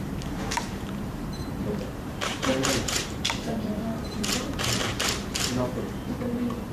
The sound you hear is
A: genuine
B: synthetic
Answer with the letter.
B